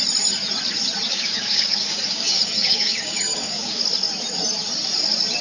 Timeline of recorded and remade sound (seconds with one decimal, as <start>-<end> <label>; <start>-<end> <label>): 0.0-1.1 recorded; 1.1-3.8 remade; 3.8-5.4 recorded